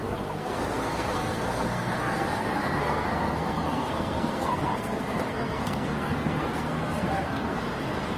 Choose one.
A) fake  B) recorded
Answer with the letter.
A